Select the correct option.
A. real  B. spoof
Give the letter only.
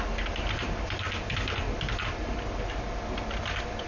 A